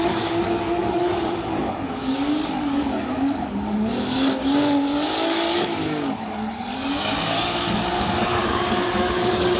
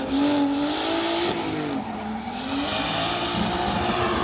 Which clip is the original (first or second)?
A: second